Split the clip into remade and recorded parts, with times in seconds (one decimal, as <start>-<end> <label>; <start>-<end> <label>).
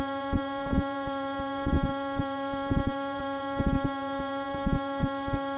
0.0-5.6 remade